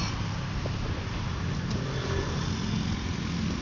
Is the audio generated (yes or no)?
no